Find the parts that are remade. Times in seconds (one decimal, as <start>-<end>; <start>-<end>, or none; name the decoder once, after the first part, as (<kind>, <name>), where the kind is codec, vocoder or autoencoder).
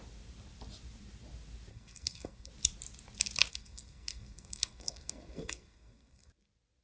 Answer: 1.7-2.5 (codec, SNAC); 3.5-6.3